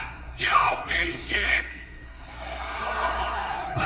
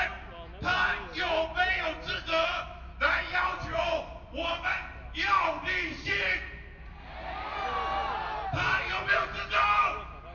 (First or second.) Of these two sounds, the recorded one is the second